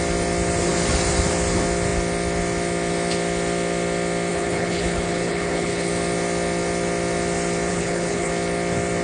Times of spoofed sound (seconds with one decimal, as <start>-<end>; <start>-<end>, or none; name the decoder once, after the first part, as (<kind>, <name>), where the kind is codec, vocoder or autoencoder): 4.3-5.9 (codec, HILCodec); 7.7-8.3